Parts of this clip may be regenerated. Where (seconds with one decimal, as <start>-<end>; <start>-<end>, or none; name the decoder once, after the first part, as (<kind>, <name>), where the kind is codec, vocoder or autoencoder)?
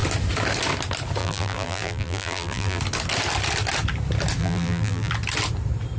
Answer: 1.2-2.8 (vocoder, BigVGAN v2); 4.4-5.1